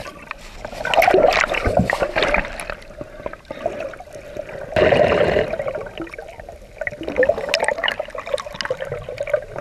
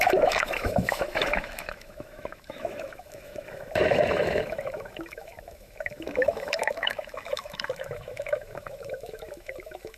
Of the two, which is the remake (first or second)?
second